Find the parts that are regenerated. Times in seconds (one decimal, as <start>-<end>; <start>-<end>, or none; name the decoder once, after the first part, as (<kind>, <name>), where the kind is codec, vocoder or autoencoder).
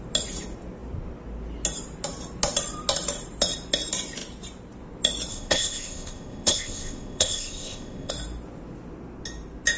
5.3-8.1 (codec, ZipCodec)